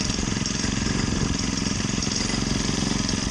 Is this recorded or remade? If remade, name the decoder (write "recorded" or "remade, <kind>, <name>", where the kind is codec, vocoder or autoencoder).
remade, vocoder, BigVGAN v2